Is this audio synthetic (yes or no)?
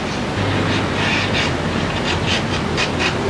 no